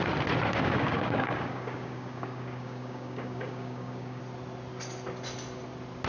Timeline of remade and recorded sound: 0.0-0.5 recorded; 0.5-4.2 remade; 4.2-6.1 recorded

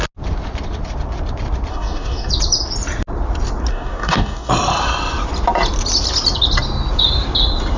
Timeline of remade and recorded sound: 0.0-1.7 recorded; 1.7-2.3 remade; 2.3-3.7 recorded; 3.7-4.5 remade; 4.5-7.8 recorded

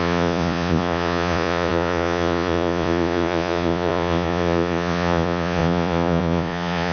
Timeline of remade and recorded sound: 0.0-6.9 remade